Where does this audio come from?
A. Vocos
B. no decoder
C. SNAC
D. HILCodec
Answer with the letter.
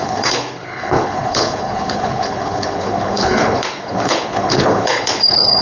D